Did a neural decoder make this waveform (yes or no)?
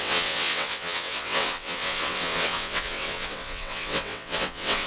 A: yes